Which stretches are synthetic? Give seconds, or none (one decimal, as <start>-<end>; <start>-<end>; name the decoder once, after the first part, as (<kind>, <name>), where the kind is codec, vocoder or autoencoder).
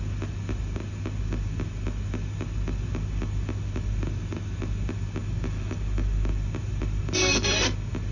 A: none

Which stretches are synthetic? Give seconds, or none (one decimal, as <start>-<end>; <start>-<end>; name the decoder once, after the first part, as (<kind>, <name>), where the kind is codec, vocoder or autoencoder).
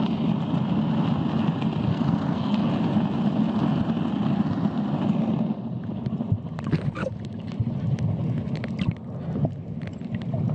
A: 1.9-2.7 (codec, SNAC)